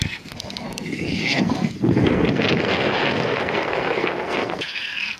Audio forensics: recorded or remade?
remade